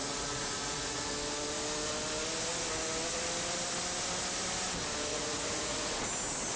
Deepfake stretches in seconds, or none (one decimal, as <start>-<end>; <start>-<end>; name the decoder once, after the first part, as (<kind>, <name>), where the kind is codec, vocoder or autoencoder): 0.0-1.1 (vocoder, Vocos); 5.1-5.9

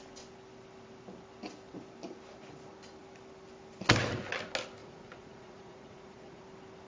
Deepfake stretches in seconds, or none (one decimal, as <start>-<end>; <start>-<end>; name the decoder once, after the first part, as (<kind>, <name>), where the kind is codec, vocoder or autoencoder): 4.8-6.4 (vocoder, Vocos)

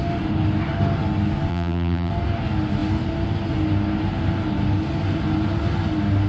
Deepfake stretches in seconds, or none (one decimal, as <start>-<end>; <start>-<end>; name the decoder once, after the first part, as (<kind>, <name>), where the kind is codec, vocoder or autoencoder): 1.5-2.1 (vocoder, BigVGAN v2)

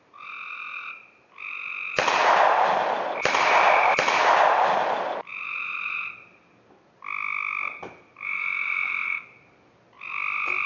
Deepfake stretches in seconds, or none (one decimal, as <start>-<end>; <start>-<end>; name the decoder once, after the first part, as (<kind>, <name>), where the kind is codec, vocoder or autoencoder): none

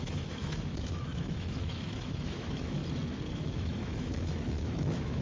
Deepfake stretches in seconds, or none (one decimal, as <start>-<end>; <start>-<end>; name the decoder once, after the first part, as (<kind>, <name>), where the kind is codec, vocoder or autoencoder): 0.0-2.8 (autoencoder, DAC-VAE); 3.3-5.2

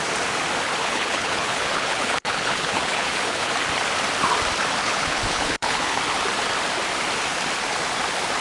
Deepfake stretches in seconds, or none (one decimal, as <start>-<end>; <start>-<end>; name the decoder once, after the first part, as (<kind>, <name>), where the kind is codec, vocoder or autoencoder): 0.8-3.5 (codec, HILCodec); 4.8-6.0

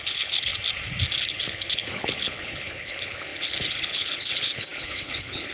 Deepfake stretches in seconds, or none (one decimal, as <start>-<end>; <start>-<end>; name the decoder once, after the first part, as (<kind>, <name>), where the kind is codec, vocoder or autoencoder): 0.0-0.5 (codec, HILCodec); 1.2-5.5

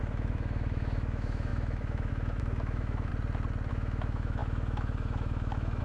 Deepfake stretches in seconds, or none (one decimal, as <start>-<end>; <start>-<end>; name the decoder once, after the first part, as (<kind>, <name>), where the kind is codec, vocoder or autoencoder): 0.0-3.1 (autoencoder, DAC-VAE); 3.7-5.8